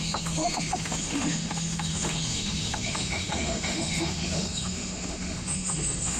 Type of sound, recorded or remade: remade